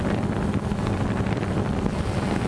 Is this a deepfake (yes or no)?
no